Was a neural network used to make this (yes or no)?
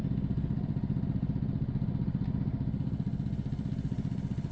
no